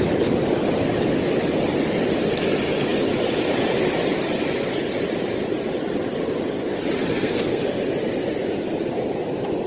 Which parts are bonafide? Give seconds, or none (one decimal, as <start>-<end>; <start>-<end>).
0.0-7.1; 7.6-9.7